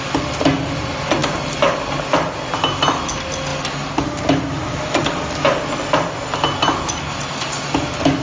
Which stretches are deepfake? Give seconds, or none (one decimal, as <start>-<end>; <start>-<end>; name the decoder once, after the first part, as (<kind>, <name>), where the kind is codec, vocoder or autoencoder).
none